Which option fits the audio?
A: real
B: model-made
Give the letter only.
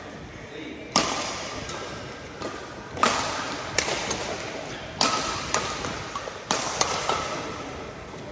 A